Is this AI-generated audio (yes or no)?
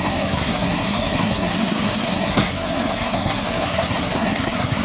yes